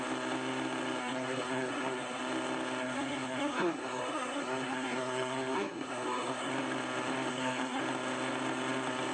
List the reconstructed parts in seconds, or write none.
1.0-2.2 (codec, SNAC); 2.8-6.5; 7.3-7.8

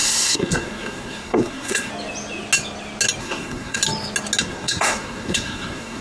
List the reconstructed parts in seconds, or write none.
0.0-1.9 (codec, SNAC); 3.2-3.8; 4.4-6.0

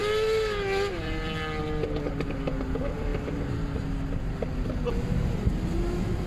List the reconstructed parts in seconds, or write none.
none

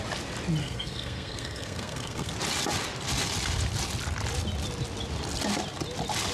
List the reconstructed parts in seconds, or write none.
0.6-2.3 (codec, SNAC)

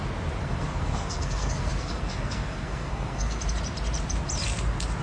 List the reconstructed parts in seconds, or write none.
0.4-3.4 (codec, SNAC)

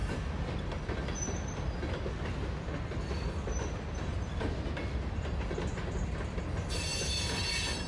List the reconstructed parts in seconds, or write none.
none

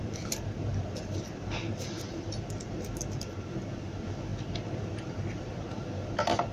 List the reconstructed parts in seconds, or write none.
none